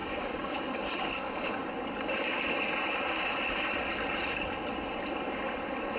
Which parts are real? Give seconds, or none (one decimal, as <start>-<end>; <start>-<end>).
1.7-6.0

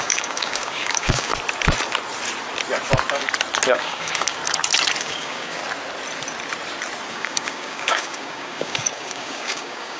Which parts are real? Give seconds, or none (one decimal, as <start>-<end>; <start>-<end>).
1.3-3.7; 4.4-5.0; 5.6-7.1

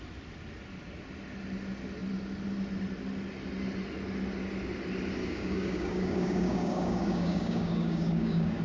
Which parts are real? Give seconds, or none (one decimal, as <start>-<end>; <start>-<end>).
0.0-5.2

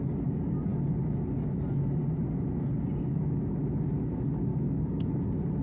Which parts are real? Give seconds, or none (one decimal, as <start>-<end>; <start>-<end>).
0.0-4.5; 5.1-5.6